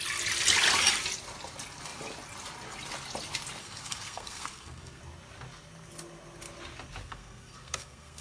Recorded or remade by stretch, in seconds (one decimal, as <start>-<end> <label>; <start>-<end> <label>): 0.0-3.6 recorded; 3.6-5.0 remade; 5.0-7.0 recorded; 7.0-8.2 remade